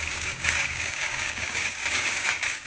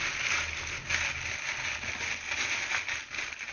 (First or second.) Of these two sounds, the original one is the second